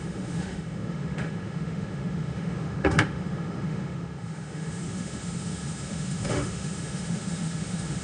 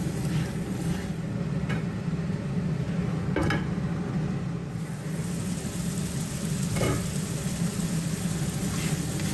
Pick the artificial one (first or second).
first